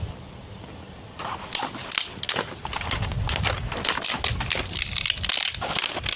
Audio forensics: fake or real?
real